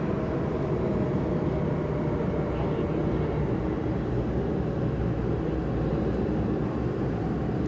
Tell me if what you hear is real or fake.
real